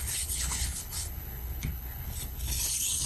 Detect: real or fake fake